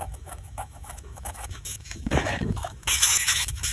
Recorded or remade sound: remade